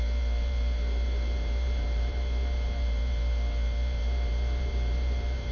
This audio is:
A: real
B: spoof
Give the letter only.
B